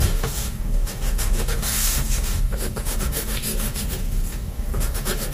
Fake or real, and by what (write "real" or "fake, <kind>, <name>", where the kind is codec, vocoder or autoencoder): fake, codec, DAC